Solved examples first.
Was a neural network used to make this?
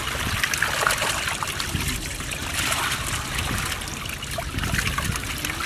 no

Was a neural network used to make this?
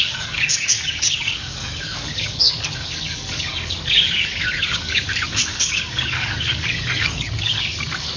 yes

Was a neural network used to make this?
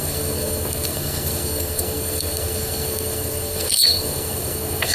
yes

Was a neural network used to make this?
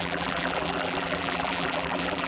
yes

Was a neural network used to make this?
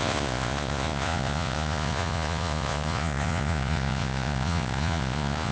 yes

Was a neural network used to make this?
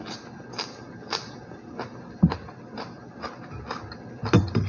no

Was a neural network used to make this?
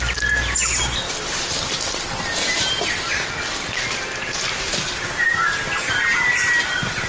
no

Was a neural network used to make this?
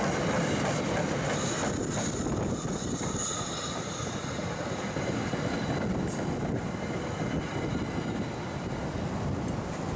no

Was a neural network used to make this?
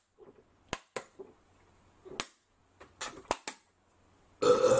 no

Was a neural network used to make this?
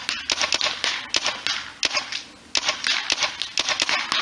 no